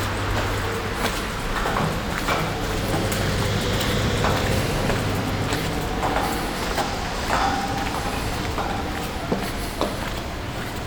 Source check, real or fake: real